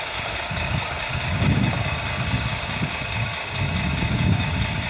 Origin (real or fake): fake